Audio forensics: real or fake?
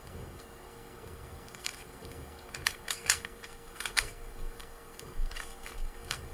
fake